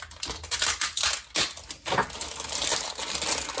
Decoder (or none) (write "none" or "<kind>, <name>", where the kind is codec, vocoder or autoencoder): none